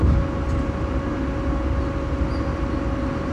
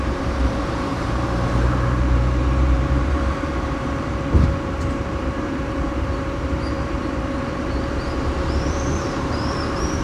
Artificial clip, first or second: second